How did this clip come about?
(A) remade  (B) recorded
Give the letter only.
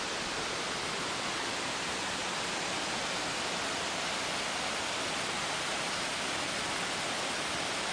B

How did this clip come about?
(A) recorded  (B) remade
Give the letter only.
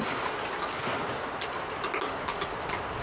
A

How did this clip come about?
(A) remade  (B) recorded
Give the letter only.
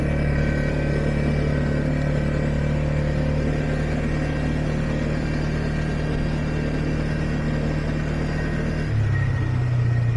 B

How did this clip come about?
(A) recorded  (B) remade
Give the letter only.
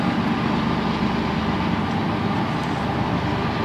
A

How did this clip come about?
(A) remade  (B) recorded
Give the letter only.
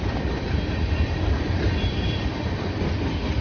A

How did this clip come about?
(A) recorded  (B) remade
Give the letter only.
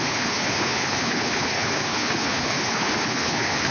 B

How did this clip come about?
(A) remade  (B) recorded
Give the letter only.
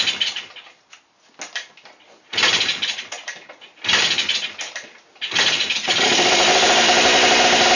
B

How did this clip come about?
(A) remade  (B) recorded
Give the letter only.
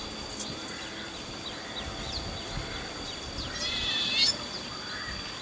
B